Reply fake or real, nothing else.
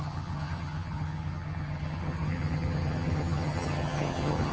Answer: fake